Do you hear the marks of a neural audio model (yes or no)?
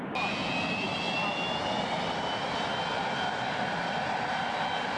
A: no